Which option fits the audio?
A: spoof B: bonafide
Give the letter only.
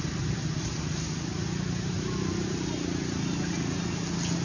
B